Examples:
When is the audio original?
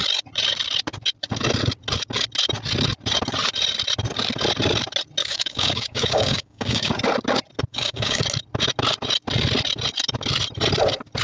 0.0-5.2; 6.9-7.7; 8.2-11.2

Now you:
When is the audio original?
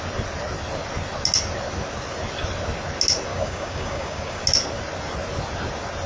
0.0-3.3; 4.4-6.1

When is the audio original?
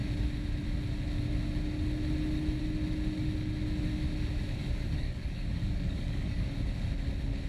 0.0-4.6; 6.5-7.5